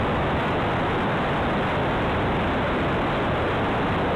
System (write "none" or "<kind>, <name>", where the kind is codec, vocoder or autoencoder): none